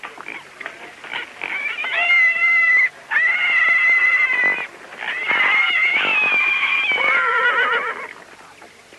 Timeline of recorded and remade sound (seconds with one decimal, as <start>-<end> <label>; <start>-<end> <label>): 0.0-2.4 recorded; 2.4-2.9 remade; 2.9-5.9 recorded; 5.9-6.7 remade; 6.7-9.0 recorded